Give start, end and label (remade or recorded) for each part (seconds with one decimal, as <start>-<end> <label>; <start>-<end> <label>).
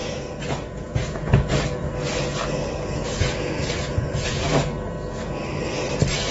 0.0-1.9 remade; 1.9-3.0 recorded; 3.0-4.6 remade; 4.6-6.3 recorded